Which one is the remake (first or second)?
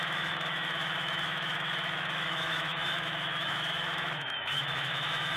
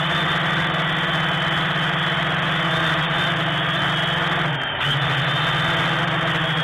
first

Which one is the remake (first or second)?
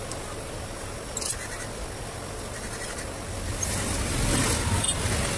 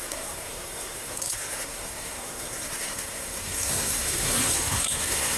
second